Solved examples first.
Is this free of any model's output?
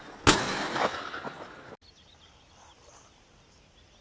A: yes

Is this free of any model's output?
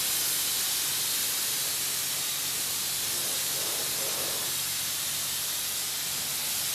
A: yes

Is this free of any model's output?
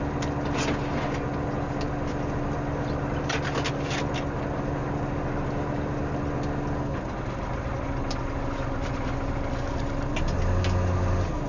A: yes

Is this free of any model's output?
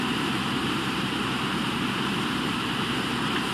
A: no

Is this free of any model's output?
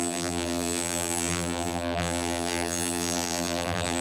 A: no